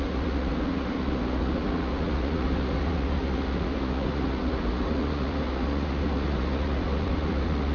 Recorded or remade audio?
remade